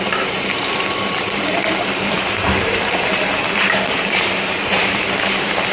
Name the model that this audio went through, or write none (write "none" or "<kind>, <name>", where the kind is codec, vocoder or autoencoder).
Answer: vocoder, BigVGAN v2